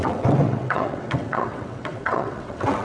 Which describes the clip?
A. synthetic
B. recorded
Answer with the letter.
A